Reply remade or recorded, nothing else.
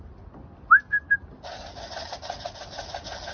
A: recorded